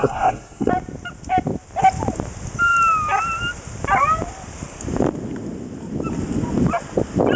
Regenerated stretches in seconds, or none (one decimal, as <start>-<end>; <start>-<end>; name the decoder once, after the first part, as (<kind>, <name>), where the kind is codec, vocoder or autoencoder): 0.0-0.7 (codec, SNAC)